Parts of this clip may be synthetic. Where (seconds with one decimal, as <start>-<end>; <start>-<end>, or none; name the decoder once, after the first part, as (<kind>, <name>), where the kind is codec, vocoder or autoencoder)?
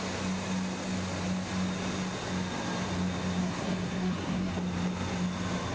3.4-4.5 (codec, SNAC)